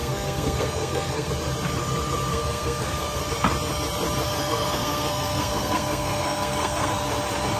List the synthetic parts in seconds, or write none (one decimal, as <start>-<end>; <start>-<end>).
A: 0.0-1.3; 2.3-3.2; 4.4-6.9

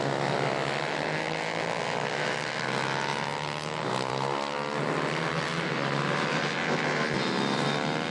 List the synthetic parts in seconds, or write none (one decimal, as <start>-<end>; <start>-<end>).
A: none

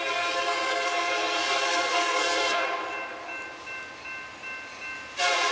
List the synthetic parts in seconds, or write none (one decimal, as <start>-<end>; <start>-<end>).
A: 0.0-2.6

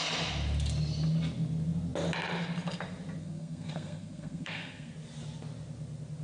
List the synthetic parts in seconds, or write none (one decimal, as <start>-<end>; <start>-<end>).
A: 3.2-4.9